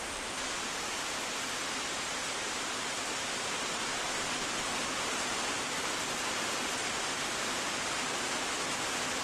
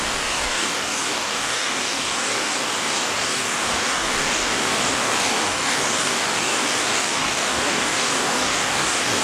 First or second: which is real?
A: first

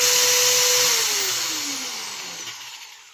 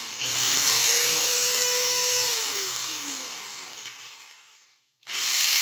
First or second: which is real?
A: first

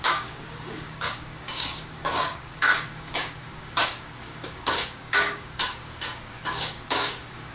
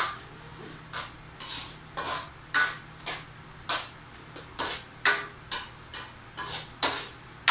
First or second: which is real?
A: second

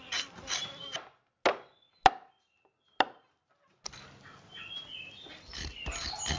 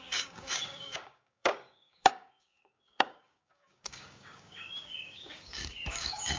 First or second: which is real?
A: first